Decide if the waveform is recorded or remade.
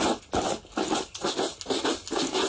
recorded